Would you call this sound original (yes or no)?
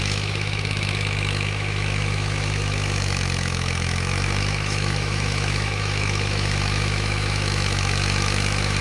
no